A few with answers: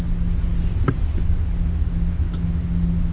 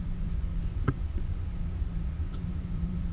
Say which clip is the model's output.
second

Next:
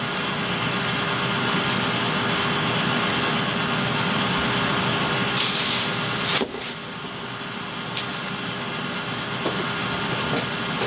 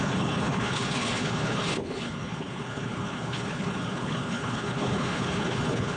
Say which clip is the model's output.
second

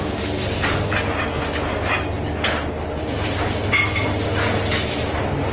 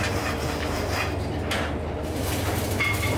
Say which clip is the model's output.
second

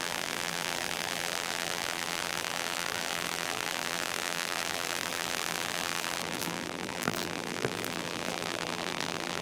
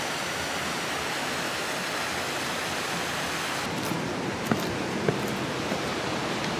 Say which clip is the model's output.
first